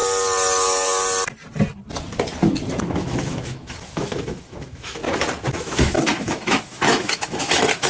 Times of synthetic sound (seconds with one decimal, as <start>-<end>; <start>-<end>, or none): 2.8-5.0; 5.5-7.9